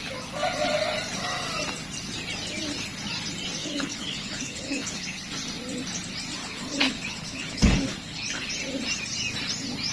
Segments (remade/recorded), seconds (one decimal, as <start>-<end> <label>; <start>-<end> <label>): 0.0-3.6 recorded; 3.6-5.3 remade; 5.3-6.4 recorded; 6.4-8.5 remade; 8.5-9.9 recorded